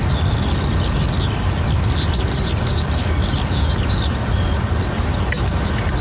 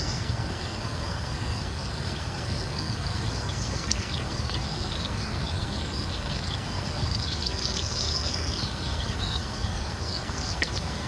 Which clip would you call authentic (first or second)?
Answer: first